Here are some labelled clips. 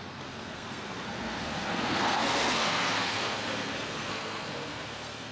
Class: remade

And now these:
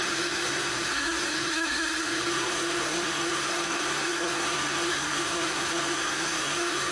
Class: remade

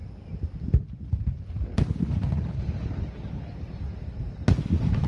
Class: recorded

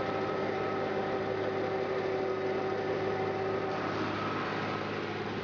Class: recorded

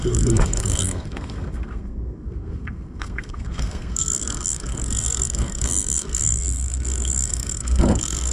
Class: remade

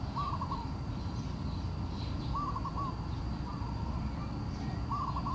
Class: recorded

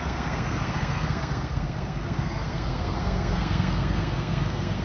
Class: remade